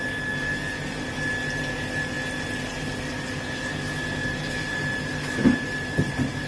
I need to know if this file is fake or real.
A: real